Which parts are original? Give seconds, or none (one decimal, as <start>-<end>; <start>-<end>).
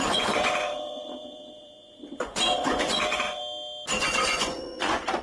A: 3.4-4.0